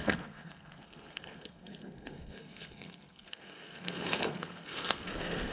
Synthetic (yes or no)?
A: yes